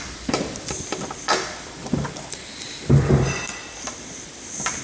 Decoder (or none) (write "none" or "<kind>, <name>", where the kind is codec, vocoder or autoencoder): none